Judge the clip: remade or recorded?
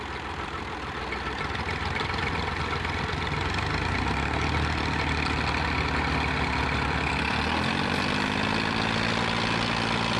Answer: recorded